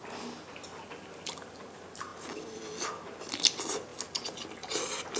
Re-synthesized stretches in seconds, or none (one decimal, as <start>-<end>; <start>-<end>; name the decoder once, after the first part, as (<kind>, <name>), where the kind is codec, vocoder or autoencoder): none